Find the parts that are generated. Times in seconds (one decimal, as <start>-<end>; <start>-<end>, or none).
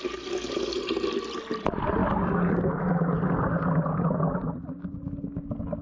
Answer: none